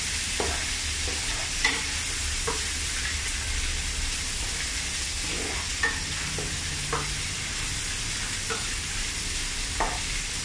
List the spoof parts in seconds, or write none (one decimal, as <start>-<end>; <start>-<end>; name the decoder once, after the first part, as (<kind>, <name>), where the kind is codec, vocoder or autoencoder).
1.1-2.0 (vocoder, BigVGAN v2)